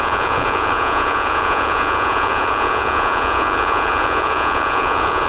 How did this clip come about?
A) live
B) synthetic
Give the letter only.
B